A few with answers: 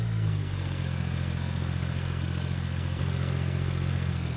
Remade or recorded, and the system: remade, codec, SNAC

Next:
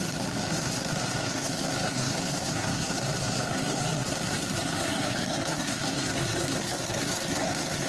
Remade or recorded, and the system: remade, codec, SNAC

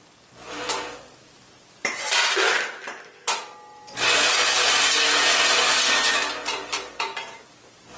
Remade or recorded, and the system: recorded